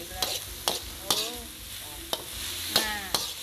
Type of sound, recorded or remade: recorded